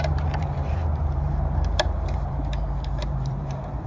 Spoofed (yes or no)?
yes